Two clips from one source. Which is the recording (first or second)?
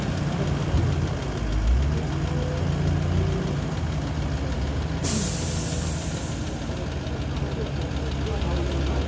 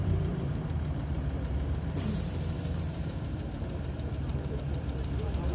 first